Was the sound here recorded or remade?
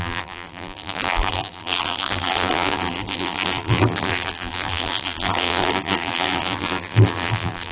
remade